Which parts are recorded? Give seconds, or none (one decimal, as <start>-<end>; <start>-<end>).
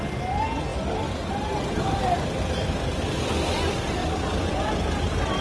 0.0-2.0; 3.3-4.0